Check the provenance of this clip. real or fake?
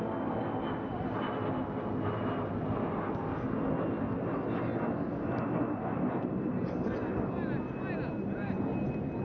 real